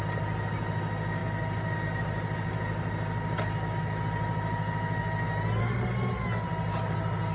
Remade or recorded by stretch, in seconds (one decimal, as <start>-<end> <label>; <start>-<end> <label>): 0.0-7.3 recorded